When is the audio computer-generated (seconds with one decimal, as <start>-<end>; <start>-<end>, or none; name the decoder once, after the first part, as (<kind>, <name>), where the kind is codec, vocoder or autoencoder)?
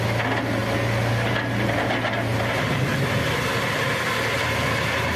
2.3-3.3 (vocoder, BigVGAN v2)